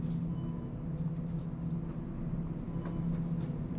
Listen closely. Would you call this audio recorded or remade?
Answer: recorded